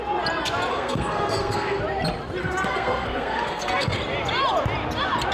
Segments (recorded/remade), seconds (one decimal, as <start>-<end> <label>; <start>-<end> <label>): 0.0-0.7 recorded; 0.7-1.8 remade; 1.8-2.4 recorded; 2.4-4.0 remade; 4.0-5.3 recorded